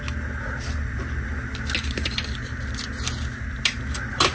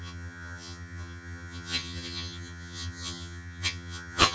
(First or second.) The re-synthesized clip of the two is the second